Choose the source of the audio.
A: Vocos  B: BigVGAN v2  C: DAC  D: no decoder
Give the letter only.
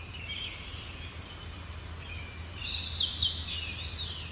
D